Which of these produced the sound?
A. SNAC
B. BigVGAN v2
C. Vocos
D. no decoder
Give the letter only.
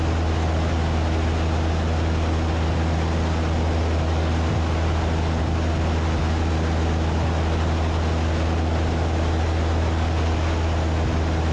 D